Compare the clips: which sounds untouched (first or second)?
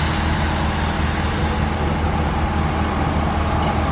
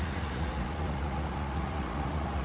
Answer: first